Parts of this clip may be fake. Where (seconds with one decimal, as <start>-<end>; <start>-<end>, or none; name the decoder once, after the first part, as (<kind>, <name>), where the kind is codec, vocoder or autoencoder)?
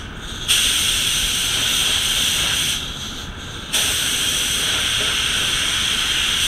1.8-2.5 (vocoder, BigVGAN v2)